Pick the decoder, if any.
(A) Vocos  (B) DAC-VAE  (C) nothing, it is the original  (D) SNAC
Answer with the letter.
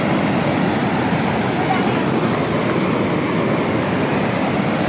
C